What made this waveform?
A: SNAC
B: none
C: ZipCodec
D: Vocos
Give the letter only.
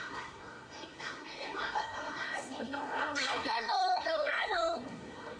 A